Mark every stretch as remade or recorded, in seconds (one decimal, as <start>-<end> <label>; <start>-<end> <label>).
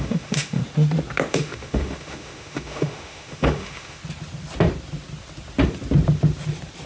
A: 0.0-0.6 remade; 0.6-1.3 recorded; 1.3-4.0 remade; 4.0-6.9 recorded